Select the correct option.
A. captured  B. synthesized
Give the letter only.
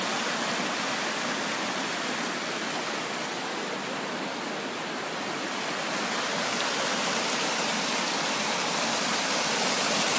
A